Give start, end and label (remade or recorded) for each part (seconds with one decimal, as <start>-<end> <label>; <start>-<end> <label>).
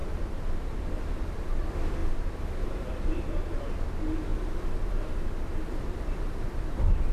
0.0-4.3 remade; 4.3-4.9 recorded; 4.9-7.1 remade